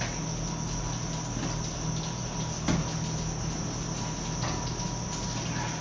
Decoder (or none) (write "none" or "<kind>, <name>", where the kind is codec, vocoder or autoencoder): none